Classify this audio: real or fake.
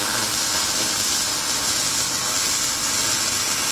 real